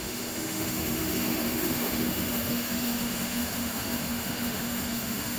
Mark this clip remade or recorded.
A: remade